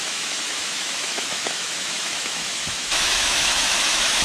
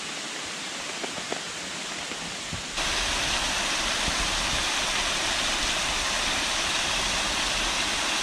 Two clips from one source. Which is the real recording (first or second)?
second